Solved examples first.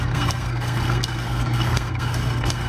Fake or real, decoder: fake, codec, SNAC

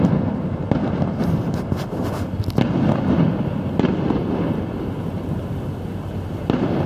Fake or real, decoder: real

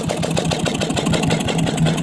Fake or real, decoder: real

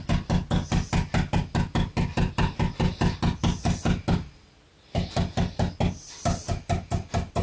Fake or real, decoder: real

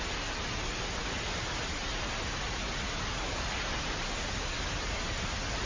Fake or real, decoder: real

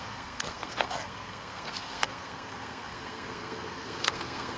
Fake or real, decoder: fake, codec, SNAC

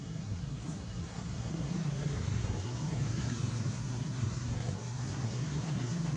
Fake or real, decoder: fake, codec, SNAC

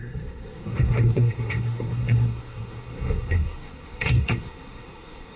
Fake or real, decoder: fake, codec, SNAC